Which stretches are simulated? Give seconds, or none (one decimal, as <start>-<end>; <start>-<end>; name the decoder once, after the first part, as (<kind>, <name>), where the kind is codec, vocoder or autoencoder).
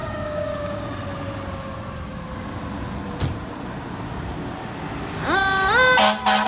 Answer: 0.0-0.8 (codec, DAC)